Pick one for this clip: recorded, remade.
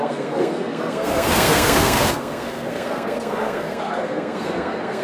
remade